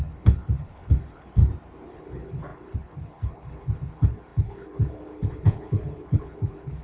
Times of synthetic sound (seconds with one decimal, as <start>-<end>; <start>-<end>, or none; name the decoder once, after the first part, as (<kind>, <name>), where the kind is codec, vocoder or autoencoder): 0.0-1.4 (codec, HILCodec); 1.9-6.8